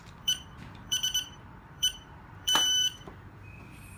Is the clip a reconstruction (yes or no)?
yes